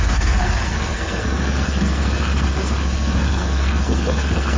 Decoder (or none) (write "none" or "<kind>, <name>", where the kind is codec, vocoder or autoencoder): codec, SNAC